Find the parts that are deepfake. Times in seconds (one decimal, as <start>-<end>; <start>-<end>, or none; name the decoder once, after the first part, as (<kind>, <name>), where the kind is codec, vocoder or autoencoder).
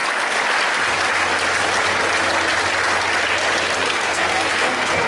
3.8-5.1 (codec, SNAC)